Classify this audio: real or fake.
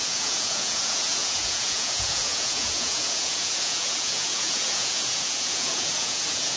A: fake